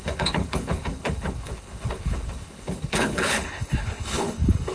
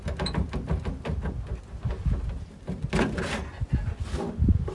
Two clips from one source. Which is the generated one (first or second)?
first